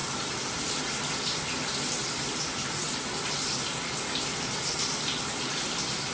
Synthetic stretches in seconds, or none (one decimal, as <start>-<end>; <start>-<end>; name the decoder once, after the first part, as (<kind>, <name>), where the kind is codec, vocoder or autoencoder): 0.0-0.8 (vocoder, BigVGAN v2)